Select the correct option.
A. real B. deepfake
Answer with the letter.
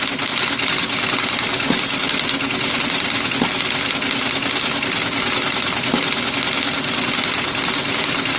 A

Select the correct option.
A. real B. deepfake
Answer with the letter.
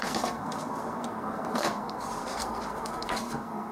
B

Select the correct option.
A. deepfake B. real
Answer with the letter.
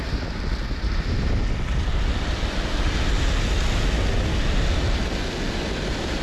B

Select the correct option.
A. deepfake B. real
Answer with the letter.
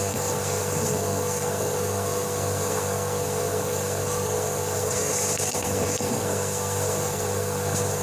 A